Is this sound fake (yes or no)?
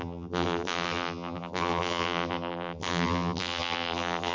yes